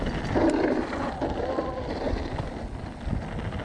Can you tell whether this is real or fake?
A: real